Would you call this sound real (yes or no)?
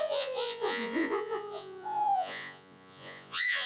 no